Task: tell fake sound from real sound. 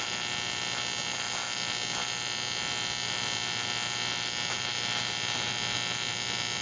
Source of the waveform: real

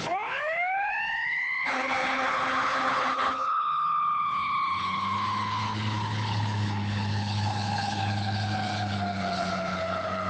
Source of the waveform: fake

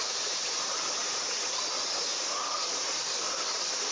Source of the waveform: fake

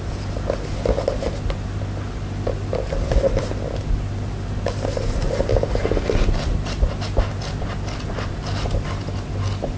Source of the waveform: real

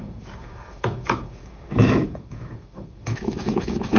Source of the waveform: fake